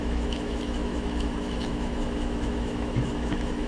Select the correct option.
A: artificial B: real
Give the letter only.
A